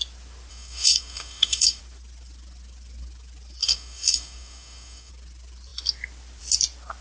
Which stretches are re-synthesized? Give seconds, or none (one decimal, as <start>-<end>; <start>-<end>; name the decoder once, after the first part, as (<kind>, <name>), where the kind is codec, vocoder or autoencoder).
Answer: 0.5-1.8 (codec, DAC); 3.6-5.1